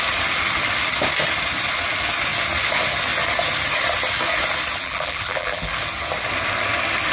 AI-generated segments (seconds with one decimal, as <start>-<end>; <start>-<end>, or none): 4.8-5.7